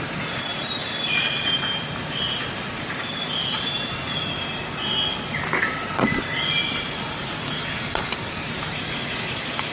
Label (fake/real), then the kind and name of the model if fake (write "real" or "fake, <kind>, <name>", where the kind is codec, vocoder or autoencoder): fake, vocoder, BigVGAN v2